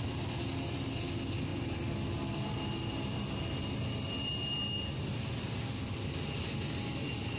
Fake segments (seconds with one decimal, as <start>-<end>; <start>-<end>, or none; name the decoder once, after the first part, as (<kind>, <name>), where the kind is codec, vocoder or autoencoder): none